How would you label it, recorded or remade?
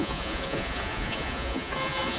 remade